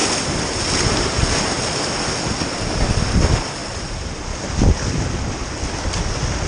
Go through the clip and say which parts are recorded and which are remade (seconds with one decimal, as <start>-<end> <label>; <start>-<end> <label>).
0.0-0.6 remade; 0.6-3.6 recorded; 3.6-5.0 remade; 5.0-6.5 recorded